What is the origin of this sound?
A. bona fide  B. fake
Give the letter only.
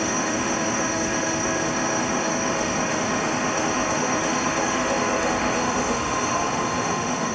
B